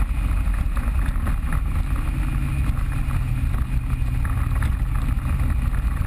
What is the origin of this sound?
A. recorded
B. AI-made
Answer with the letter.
A